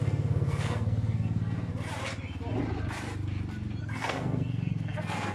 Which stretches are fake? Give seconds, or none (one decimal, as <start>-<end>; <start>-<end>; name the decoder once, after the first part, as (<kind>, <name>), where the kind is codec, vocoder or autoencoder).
0.0-1.7 (codec, SNAC); 3.8-5.3